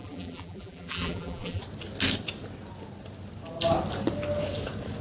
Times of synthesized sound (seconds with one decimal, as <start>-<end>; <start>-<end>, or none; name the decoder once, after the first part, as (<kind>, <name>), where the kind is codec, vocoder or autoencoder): 0.0-1.6 (vocoder, BigVGAN v2)